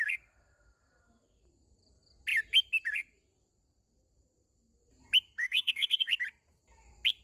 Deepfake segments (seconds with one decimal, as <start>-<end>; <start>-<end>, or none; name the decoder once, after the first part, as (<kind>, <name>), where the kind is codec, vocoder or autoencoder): 5.4-6.1 (codec, SNAC)